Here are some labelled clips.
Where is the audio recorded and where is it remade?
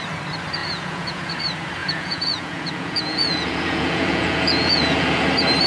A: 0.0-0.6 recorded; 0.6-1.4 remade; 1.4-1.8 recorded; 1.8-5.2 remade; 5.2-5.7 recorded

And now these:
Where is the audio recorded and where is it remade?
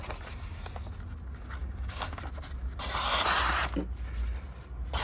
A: 0.0-1.6 recorded; 1.6-2.2 remade; 2.2-5.0 recorded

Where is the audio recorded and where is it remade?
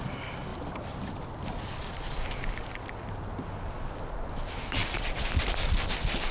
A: 0.0-6.3 recorded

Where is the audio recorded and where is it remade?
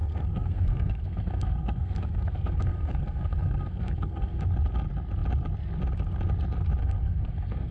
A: 0.0-4.4 remade; 4.4-6.8 recorded; 6.8-7.7 remade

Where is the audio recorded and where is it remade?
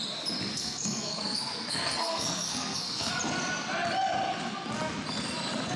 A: 0.0-0.5 recorded; 0.5-3.1 remade; 3.1-5.8 recorded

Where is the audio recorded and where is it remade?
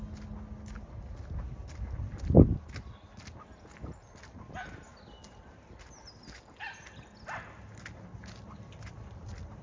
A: 0.0-9.6 recorded